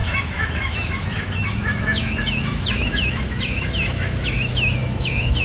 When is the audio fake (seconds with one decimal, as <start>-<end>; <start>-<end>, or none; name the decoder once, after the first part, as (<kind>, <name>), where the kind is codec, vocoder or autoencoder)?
0.0-5.4 (autoencoder, DAC-VAE)